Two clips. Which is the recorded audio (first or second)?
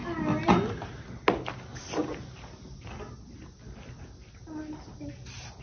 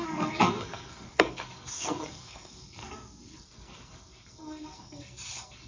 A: first